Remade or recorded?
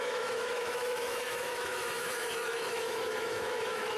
remade